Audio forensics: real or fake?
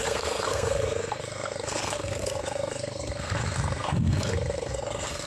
fake